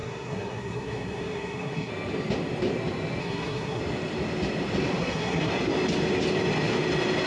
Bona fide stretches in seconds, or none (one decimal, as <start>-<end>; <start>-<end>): 1.9-3.2; 3.8-5.0; 5.5-7.3

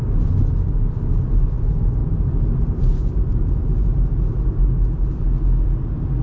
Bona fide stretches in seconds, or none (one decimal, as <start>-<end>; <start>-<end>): 0.0-6.2